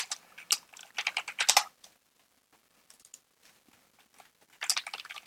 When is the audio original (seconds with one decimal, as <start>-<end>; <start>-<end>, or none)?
0.0-5.3